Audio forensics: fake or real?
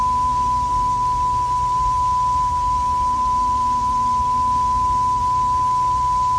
fake